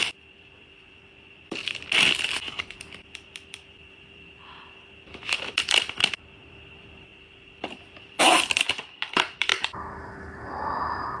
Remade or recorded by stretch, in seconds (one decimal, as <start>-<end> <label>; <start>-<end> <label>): 0.0-9.5 remade; 9.5-10.5 recorded; 10.5-11.2 remade